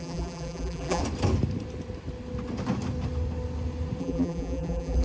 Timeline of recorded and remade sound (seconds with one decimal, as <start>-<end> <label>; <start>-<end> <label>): 0.0-1.0 remade; 1.0-4.0 recorded; 4.0-5.0 remade